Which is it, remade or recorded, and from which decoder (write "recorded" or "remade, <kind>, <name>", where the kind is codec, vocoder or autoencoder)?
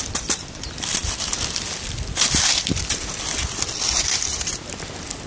recorded